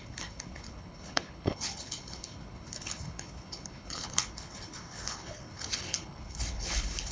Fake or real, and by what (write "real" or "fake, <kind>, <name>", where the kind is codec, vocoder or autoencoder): fake, codec, HILCodec